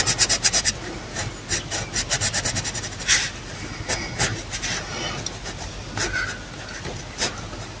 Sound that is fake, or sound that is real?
real